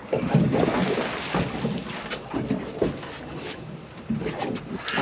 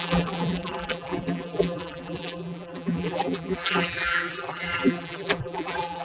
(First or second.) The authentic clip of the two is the first